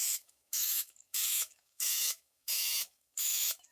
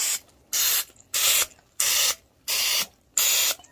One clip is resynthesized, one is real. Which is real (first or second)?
second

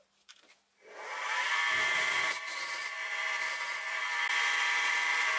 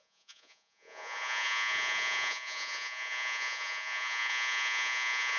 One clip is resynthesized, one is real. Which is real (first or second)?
first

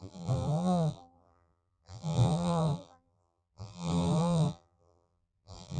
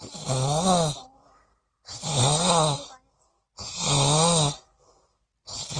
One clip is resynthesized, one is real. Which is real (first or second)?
second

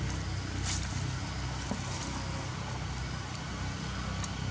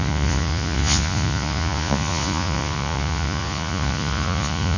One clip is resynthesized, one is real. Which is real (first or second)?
first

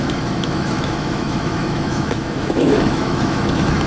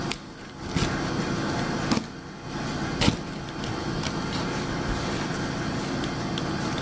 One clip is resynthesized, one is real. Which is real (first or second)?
second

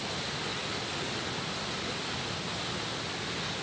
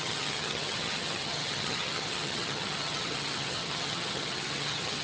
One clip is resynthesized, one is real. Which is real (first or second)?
first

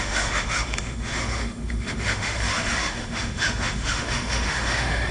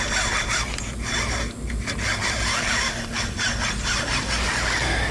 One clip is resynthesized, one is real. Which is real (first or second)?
second